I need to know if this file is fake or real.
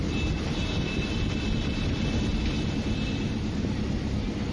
real